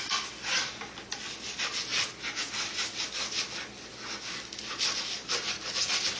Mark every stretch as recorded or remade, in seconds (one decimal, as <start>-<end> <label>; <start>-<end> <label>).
0.0-6.2 recorded